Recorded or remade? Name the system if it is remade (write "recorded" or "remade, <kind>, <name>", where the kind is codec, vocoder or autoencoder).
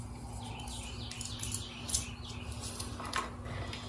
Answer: recorded